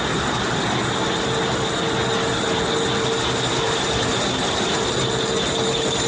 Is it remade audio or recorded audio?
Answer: recorded